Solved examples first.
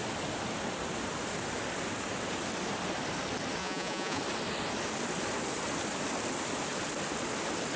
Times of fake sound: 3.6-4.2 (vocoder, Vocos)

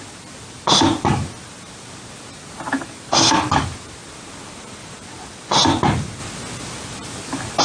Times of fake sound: none

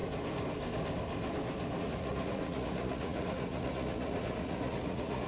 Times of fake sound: 1.8-5.3 (vocoder, Vocos)

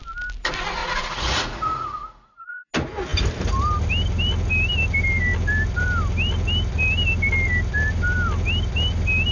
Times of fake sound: 0.8-2.7 (vocoder, Vocos)

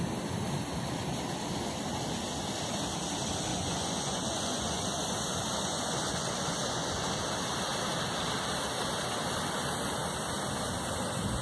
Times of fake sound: 3.5-7.1 (vocoder, Vocos)

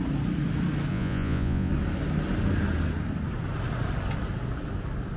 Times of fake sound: 0.9-1.7 (vocoder, Vocos)

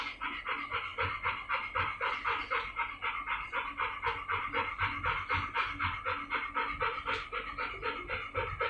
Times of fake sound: none